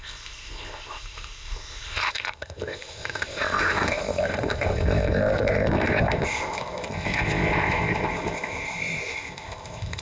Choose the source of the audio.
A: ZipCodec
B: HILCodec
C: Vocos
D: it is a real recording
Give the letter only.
A